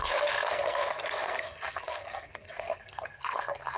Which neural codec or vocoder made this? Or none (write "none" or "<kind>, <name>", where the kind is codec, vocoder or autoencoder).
codec, SNAC